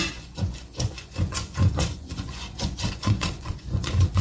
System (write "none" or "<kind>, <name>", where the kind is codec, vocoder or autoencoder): vocoder, Vocos